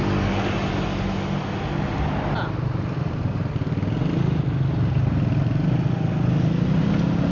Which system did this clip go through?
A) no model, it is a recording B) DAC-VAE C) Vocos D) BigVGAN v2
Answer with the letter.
A